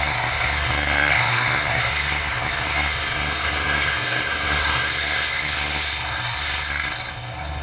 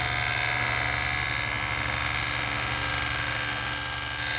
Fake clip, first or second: first